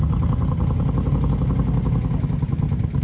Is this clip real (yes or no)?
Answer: yes